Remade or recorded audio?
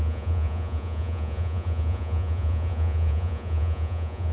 remade